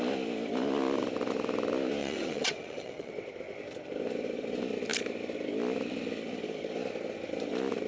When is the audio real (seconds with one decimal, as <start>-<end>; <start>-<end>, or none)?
0.0-2.0; 3.1-7.9